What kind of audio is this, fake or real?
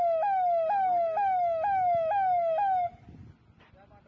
real